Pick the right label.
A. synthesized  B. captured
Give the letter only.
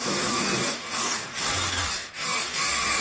A